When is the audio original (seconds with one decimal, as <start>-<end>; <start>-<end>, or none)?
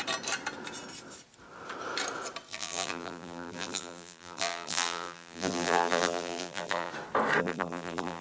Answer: 0.0-2.5; 6.9-7.4